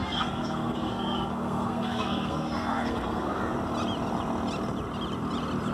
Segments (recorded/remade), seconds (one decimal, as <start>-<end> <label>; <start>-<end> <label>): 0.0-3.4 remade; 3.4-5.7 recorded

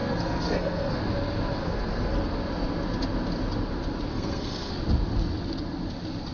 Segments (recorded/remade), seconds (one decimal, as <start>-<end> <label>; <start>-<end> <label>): 0.0-1.0 remade; 1.0-1.6 recorded; 1.6-2.3 remade; 2.3-4.1 recorded; 4.1-4.7 remade; 4.7-6.3 recorded

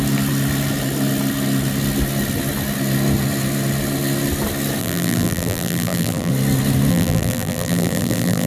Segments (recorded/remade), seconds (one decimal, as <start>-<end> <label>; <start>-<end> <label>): 0.0-4.8 recorded; 4.8-6.3 remade; 6.3-6.9 recorded; 6.9-8.5 remade

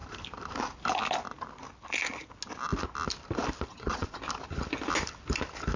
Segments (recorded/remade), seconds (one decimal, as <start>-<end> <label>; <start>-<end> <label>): 0.0-3.7 recorded; 3.7-4.2 remade; 4.2-5.8 recorded

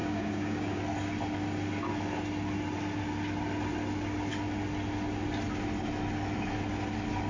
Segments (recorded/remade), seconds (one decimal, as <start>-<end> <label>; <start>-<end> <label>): 0.0-0.8 remade; 0.8-7.3 recorded

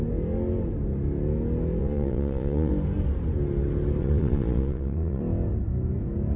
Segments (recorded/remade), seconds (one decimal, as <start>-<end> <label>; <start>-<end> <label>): 0.0-1.8 recorded; 1.8-2.7 remade; 2.7-4.0 recorded; 4.0-5.2 remade; 5.2-6.4 recorded

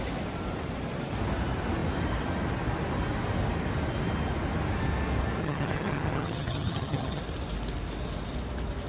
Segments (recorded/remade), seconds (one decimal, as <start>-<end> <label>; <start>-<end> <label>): 0.0-5.4 recorded; 5.4-7.2 remade; 7.2-8.9 recorded

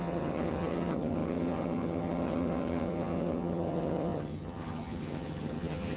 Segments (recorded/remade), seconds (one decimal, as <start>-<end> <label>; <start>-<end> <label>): 0.0-6.0 remade